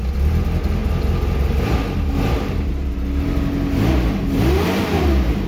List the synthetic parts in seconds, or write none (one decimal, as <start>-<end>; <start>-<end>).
none